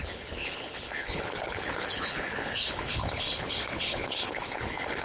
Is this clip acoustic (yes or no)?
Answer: no